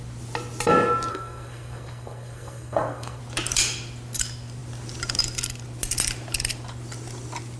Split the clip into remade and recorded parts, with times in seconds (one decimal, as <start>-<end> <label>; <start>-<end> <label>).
0.0-1.1 recorded; 1.1-3.2 remade; 3.2-7.6 recorded